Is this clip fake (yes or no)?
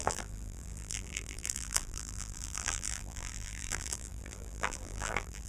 yes